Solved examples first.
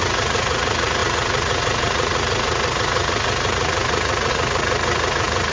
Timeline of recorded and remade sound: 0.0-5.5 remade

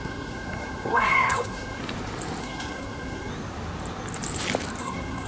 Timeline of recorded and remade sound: 0.0-1.8 remade; 1.8-2.4 recorded; 2.4-3.3 remade; 3.3-4.8 recorded; 4.8-5.3 remade

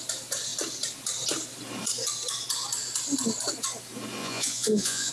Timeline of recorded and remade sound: 0.0-4.2 recorded; 4.2-5.1 remade

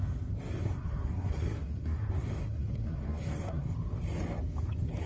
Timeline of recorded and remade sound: 0.0-0.6 recorded; 0.6-3.7 remade; 3.7-5.1 recorded

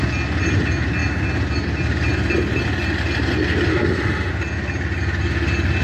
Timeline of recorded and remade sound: 0.0-3.7 recorded; 3.7-4.3 remade; 4.3-5.8 recorded

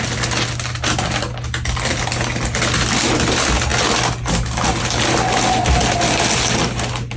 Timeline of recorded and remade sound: 0.0-7.2 recorded